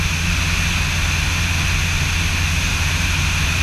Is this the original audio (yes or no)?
yes